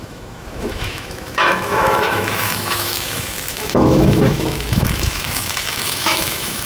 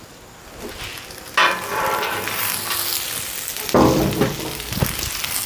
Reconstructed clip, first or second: first